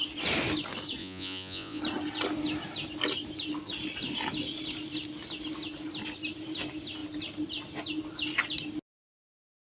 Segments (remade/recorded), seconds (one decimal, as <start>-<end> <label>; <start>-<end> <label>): 0.0-1.0 recorded; 1.0-1.8 remade; 1.8-9.6 recorded